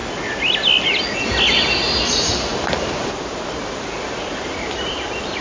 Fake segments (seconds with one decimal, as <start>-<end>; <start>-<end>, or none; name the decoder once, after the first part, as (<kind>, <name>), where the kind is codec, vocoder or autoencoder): 1.7-5.4 (vocoder, BigVGAN v2)